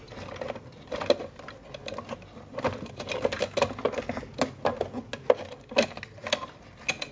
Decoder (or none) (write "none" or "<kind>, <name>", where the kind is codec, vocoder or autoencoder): none